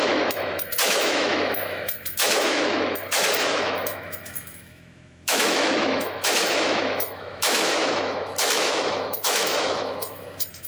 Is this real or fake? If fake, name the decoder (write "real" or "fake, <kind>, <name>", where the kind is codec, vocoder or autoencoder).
fake, autoencoder, DAC-VAE